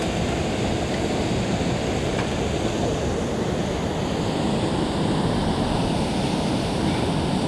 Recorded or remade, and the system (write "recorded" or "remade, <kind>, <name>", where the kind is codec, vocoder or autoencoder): recorded